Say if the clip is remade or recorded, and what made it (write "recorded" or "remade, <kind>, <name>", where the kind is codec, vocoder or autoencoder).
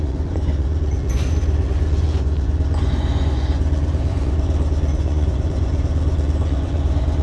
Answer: remade, vocoder, Vocos